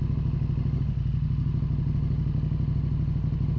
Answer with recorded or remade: recorded